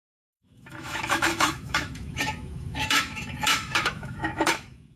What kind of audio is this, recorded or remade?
remade